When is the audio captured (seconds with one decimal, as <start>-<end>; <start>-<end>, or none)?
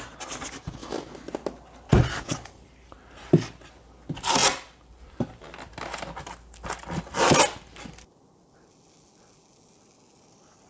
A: 0.0-10.7